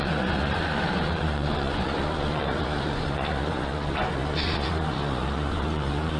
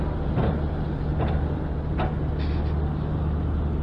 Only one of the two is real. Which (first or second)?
second